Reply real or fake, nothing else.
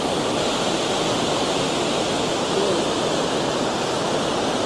real